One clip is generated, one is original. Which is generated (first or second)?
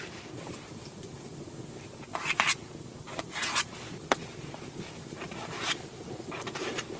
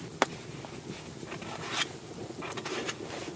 first